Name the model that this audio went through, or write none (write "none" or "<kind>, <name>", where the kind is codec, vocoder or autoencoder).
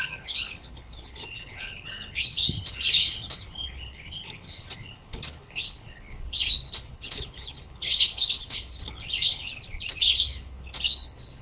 codec, HILCodec